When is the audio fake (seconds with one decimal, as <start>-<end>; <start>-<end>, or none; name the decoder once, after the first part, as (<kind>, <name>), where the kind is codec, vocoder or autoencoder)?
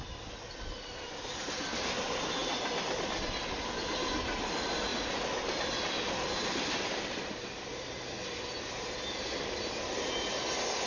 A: none